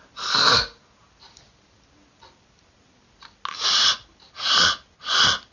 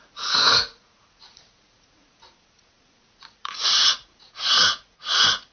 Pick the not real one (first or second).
second